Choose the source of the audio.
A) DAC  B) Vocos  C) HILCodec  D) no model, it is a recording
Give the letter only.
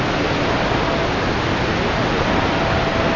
D